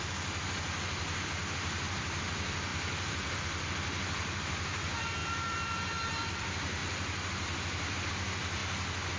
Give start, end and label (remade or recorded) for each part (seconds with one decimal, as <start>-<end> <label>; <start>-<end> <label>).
0.0-8.6 remade; 8.6-9.2 recorded